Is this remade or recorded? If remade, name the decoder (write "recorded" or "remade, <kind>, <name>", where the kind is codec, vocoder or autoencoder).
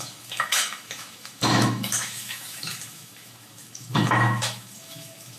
remade, autoencoder, DAC-VAE